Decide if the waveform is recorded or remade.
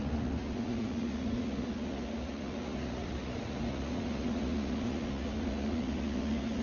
remade